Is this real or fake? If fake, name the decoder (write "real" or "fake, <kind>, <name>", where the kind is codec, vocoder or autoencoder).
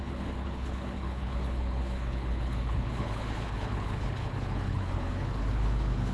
fake, codec, HILCodec